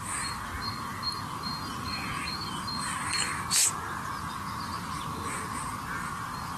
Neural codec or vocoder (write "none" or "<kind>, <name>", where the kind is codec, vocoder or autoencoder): none